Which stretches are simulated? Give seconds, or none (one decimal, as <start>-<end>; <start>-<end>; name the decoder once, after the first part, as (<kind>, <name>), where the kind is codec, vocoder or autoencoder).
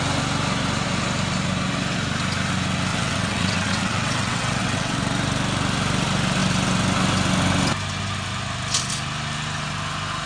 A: 2.9-5.0 (vocoder, WaveNeXt)